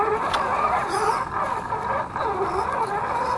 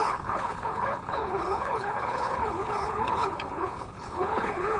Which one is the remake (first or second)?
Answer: second